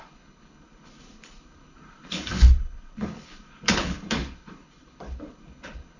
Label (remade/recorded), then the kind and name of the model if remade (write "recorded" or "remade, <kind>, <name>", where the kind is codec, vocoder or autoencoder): remade, codec, HILCodec